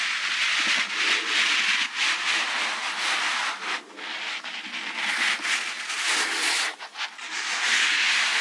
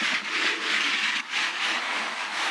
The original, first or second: first